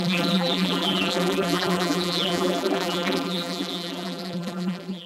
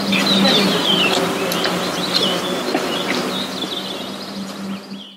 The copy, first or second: first